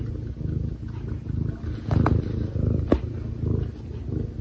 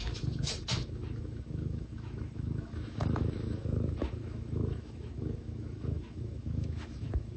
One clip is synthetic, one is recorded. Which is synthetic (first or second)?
second